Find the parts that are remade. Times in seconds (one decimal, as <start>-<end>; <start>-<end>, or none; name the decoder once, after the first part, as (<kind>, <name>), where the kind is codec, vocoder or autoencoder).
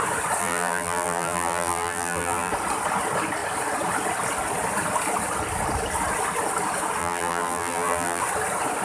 0.4-2.5 (vocoder, BigVGAN v2); 7.0-8.2